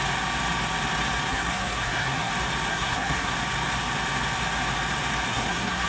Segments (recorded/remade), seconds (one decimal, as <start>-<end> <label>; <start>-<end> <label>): 0.0-1.3 recorded; 1.3-2.3 remade; 2.3-2.7 recorded; 2.7-3.3 remade; 3.3-5.3 recorded; 5.3-5.9 remade